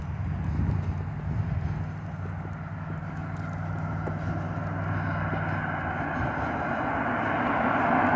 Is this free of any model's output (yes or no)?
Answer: yes